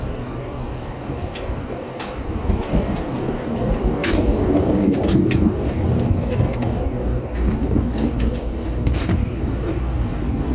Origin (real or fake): fake